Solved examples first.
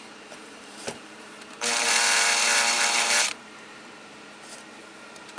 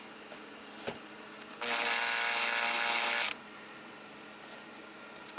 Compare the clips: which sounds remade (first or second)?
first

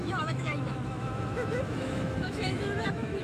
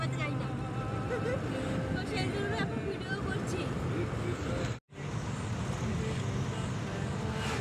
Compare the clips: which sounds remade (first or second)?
first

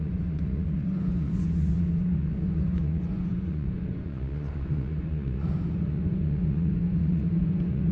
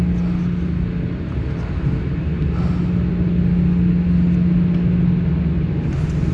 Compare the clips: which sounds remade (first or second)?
first